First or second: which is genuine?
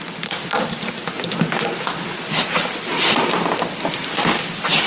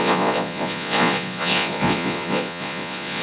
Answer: first